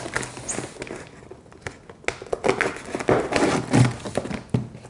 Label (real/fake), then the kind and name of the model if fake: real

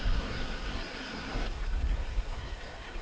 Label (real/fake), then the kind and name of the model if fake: fake, codec, SNAC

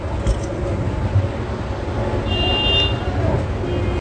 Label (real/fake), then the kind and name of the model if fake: real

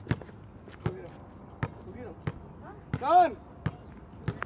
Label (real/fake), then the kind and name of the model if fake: real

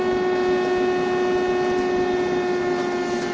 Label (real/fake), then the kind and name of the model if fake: real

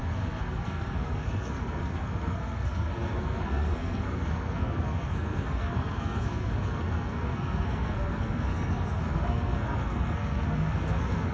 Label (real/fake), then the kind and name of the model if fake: fake, codec, SNAC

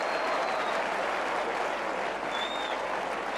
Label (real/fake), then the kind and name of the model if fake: real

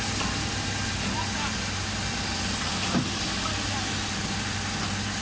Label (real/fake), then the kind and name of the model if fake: real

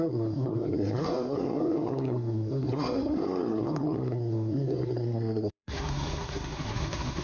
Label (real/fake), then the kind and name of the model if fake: fake, codec, SNAC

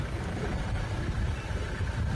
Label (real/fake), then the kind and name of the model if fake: real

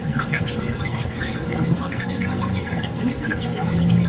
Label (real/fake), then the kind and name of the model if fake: fake, codec, SNAC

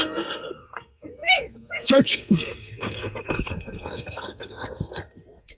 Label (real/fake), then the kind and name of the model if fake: fake, codec, SNAC